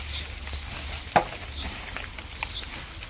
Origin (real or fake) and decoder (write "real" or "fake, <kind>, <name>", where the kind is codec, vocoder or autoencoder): real